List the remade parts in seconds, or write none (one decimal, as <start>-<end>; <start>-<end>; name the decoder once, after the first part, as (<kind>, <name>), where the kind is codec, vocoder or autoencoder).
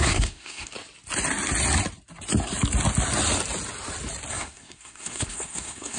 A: 0.0-0.7 (codec, SNAC); 4.3-6.0